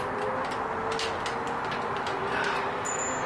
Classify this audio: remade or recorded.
recorded